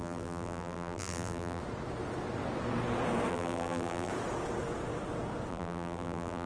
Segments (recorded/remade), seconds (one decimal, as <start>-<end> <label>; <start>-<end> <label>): 0.0-1.6 remade; 1.6-3.3 recorded; 3.3-4.1 remade; 4.1-5.5 recorded; 5.5-6.5 remade